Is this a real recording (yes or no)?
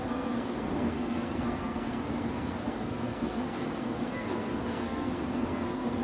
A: no